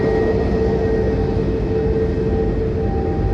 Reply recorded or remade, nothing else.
recorded